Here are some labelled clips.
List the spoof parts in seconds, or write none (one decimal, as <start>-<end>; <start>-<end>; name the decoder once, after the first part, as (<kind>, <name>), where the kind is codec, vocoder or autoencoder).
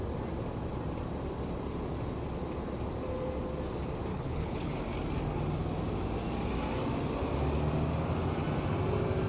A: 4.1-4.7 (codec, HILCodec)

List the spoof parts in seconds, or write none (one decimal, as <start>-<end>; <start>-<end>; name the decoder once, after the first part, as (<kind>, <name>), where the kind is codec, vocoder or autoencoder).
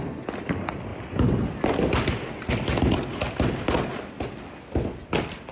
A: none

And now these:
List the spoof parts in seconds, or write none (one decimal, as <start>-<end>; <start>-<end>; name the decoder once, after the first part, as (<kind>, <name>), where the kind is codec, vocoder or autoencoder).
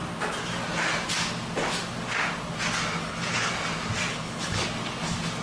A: 3.0-3.5 (codec, HILCodec); 4.1-4.6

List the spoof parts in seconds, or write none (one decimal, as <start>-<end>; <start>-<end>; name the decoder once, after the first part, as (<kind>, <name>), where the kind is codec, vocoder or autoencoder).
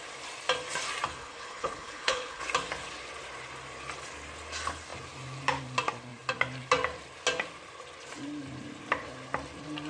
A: 1.1-2.4 (codec, HILCodec)